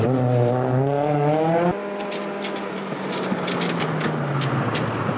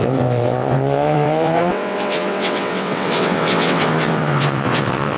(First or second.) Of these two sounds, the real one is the first